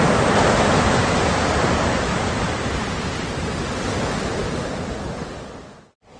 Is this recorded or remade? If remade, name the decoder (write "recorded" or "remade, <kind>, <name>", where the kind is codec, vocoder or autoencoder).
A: recorded